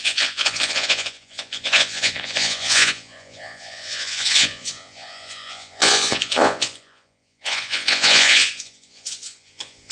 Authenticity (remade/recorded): remade